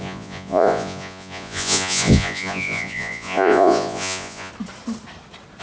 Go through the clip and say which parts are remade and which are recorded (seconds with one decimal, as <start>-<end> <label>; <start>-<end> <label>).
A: 0.0-4.5 remade; 4.5-5.6 recorded

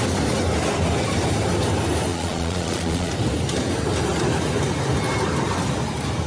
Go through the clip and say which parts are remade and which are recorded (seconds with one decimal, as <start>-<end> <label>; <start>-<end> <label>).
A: 0.0-2.1 recorded; 2.1-3.1 remade; 3.1-6.3 recorded